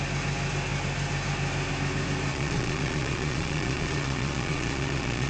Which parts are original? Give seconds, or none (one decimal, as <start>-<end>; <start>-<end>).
0.0-2.3